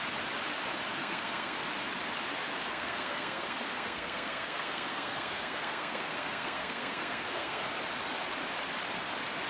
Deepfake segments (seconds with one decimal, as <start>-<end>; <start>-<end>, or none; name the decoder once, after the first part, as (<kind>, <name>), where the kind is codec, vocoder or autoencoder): 1.0-1.6 (codec, SNAC); 2.6-7.7